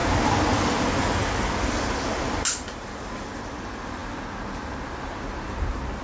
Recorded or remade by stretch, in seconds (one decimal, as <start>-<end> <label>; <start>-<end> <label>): 0.0-6.0 recorded